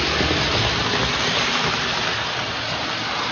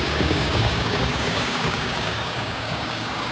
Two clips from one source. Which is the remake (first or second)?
second